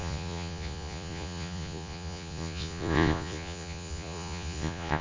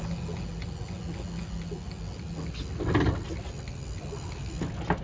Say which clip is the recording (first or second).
second